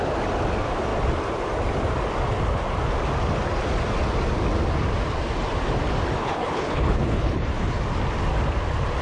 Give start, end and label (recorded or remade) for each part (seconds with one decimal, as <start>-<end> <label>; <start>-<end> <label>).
0.0-6.2 recorded; 6.2-7.8 remade; 7.8-9.0 recorded